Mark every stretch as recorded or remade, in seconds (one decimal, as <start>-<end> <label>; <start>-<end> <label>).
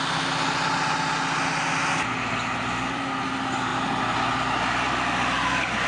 0.0-5.9 recorded